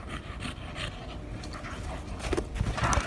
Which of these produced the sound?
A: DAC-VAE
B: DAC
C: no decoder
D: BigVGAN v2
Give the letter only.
C